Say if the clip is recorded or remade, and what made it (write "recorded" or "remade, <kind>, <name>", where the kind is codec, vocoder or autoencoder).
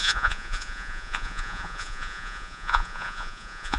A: remade, vocoder, Vocos